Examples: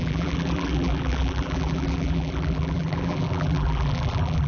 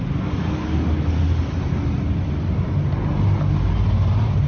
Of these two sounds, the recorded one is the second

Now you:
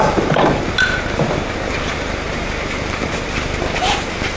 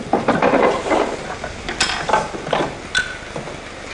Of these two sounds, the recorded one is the second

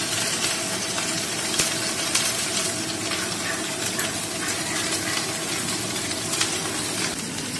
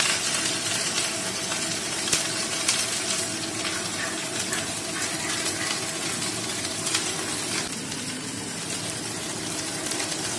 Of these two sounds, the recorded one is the second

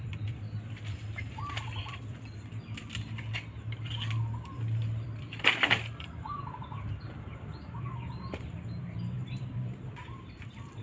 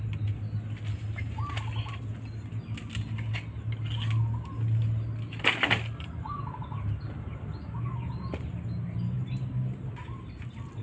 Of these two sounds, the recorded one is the second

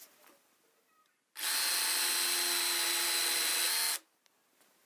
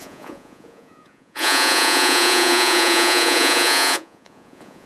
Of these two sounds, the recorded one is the first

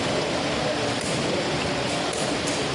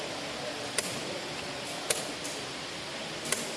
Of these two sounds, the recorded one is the second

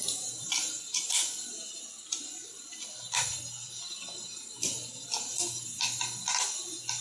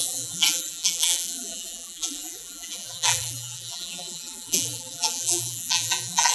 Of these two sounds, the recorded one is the first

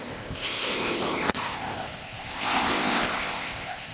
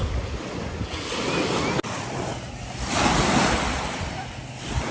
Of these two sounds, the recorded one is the second